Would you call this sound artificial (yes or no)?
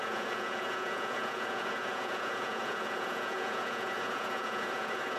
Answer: yes